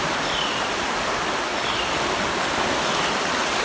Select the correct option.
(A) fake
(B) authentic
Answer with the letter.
B